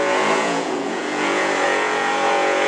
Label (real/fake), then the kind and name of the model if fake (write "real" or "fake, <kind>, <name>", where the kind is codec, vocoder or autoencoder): fake, vocoder, Vocos